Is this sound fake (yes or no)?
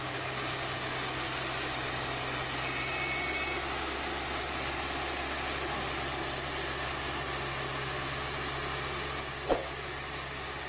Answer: no